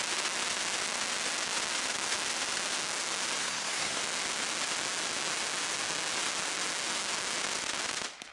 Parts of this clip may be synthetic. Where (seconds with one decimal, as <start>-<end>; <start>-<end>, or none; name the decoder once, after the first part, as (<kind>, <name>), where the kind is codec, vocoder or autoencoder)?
3.4-4.0 (codec, SNAC)

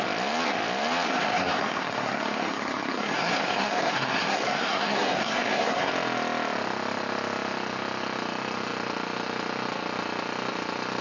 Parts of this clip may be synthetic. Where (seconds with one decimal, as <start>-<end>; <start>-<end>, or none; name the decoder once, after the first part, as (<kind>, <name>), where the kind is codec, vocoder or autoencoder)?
1.1-5.9 (codec, SNAC)